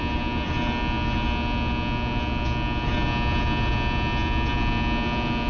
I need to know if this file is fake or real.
real